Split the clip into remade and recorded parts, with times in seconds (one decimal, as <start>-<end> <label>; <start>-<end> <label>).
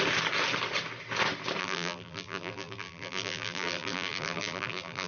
0.0-1.6 recorded; 1.6-5.1 remade